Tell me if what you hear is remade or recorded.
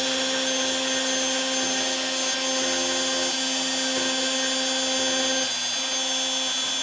recorded